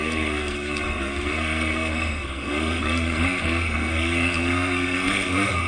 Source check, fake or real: fake